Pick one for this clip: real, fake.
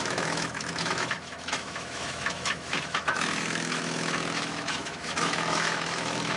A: fake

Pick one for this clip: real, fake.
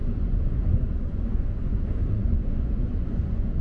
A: fake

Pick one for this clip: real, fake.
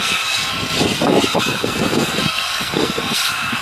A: fake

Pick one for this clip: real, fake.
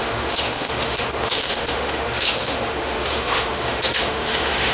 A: fake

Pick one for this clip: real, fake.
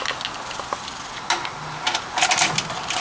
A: real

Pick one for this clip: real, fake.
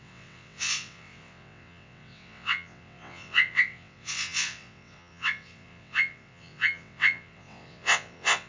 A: fake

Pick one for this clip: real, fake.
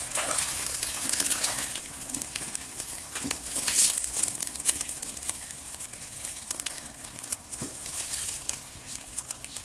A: fake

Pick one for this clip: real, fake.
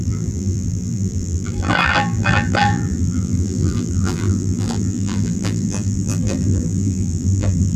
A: fake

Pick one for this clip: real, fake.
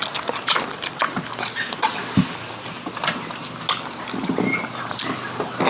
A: real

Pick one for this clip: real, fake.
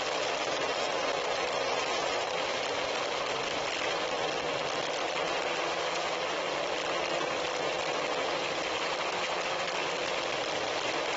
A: real